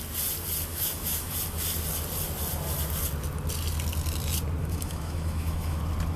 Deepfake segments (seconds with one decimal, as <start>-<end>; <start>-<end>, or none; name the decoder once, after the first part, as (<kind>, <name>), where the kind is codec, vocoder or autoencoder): 0.7-1.3 (autoencoder, DAC-VAE); 4.6-5.8